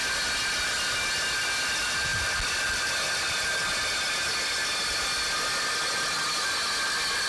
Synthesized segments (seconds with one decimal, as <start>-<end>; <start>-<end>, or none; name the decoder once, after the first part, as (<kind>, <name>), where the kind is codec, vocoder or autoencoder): none